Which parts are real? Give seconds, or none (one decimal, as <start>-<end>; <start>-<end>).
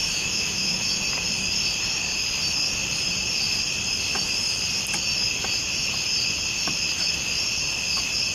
1.1-8.3